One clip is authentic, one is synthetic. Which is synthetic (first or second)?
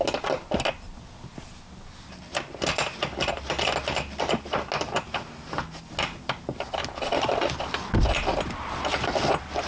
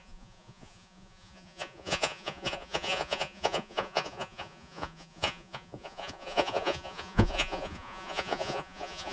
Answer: second